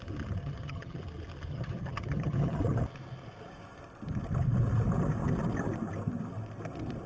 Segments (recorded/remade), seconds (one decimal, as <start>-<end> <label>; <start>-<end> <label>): 0.0-0.4 recorded; 0.4-1.0 remade; 1.0-1.5 recorded; 1.5-2.6 remade; 2.6-7.1 recorded